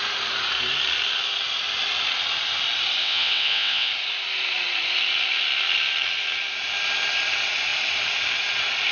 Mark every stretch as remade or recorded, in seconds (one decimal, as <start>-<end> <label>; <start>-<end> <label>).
0.0-3.0 recorded; 3.0-3.9 remade; 3.9-8.9 recorded